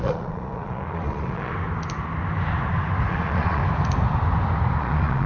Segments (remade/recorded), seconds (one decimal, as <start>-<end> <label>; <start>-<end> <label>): 0.0-1.5 remade; 1.5-3.1 recorded; 3.1-3.6 remade; 3.6-4.8 recorded; 4.8-5.3 remade